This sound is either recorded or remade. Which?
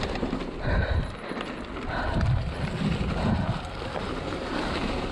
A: recorded